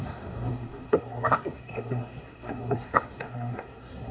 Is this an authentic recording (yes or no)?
no